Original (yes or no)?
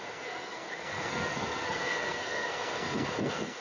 no